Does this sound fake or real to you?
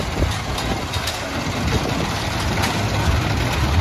real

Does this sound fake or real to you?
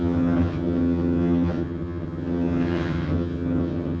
fake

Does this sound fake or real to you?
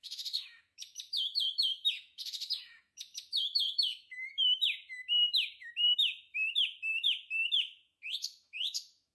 fake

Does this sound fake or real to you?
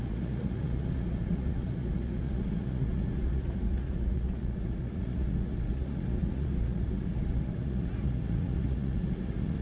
fake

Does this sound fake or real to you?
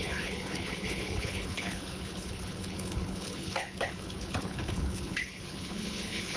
fake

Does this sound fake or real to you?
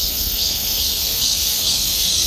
fake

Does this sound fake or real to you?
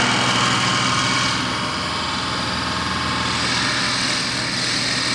real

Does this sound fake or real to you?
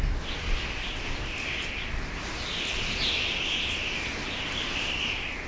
real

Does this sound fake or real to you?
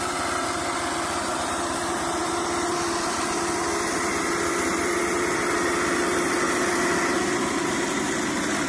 real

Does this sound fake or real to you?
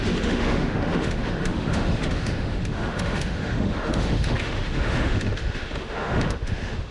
fake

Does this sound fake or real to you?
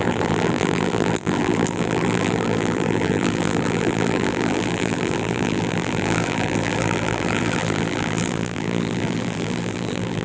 fake